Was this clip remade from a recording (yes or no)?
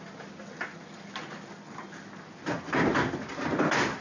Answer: no